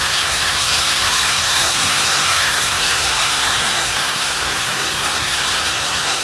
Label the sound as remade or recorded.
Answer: remade